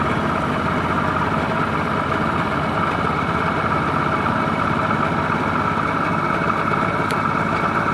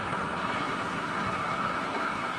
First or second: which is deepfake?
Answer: second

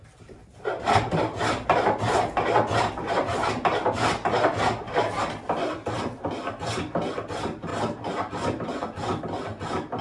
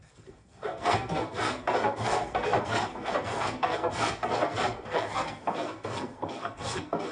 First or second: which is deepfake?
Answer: second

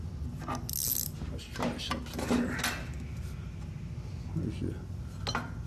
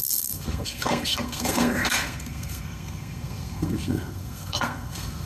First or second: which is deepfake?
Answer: second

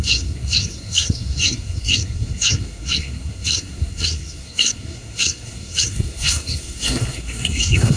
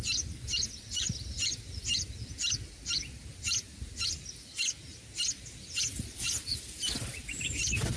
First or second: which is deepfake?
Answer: first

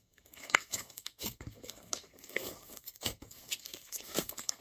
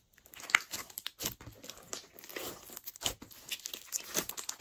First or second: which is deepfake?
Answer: first